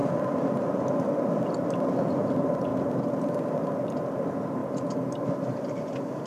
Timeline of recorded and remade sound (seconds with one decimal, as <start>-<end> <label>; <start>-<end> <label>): 0.0-0.8 remade; 0.8-6.3 recorded